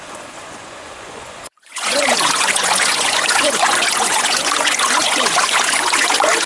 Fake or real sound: fake